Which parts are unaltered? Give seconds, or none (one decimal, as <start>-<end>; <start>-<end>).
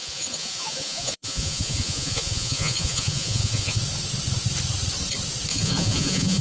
3.8-5.5